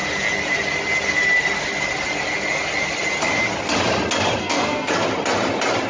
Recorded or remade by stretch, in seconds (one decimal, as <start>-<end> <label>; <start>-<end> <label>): 0.0-4.4 recorded; 4.4-4.9 remade; 4.9-5.9 recorded